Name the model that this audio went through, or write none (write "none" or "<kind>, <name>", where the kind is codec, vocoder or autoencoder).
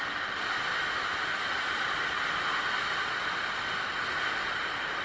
none